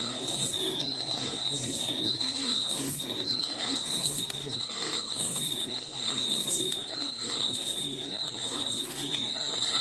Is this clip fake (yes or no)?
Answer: yes